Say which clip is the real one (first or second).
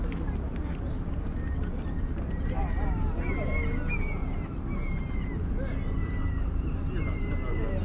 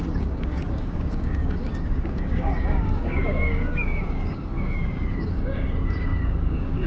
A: first